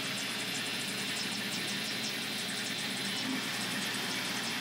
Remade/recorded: recorded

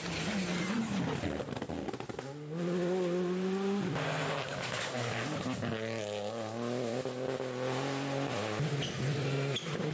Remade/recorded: recorded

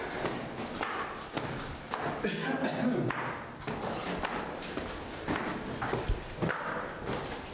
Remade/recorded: recorded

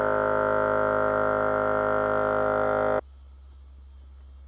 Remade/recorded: recorded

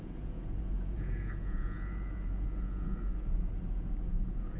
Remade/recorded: remade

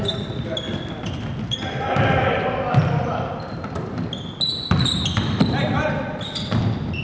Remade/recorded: recorded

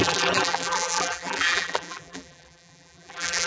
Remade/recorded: remade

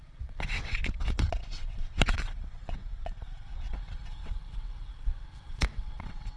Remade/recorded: remade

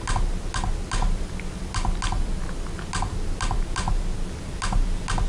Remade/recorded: recorded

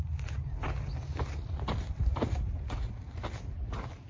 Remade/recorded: recorded